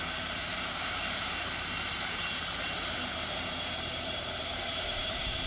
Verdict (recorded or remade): remade